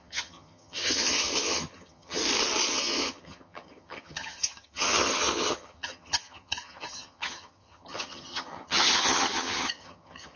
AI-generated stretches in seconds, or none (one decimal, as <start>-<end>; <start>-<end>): 0.0-2.2; 2.7-10.4